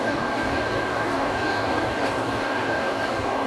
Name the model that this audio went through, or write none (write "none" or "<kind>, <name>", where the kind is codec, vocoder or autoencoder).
codec, DAC